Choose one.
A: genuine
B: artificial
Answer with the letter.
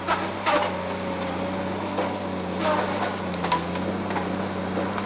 A